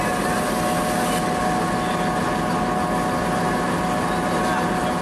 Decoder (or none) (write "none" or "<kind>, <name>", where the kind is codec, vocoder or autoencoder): none